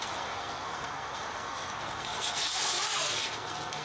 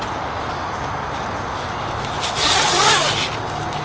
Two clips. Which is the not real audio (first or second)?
first